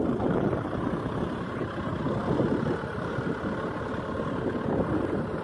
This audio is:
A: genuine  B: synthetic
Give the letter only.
A